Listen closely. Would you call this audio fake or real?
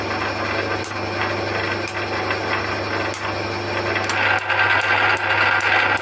real